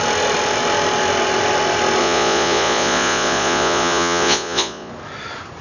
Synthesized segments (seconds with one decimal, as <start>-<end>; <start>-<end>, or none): 2.0-4.9